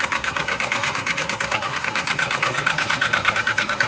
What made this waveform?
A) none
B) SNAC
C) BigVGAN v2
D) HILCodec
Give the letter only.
B